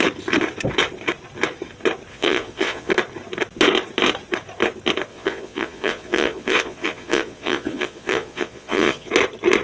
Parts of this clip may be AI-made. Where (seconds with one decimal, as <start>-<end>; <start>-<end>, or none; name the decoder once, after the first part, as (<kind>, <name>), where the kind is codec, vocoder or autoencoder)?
2.1-2.9 (vocoder, Vocos); 5.1-9.1